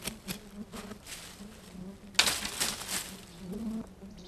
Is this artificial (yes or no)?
no